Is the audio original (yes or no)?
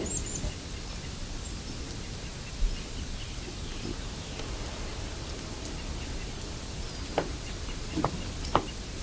yes